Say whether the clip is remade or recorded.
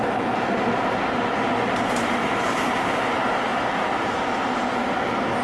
recorded